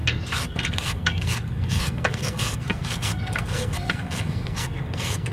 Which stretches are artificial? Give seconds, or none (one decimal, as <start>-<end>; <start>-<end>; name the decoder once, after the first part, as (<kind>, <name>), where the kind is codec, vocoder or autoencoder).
0.0-5.3 (codec, SNAC)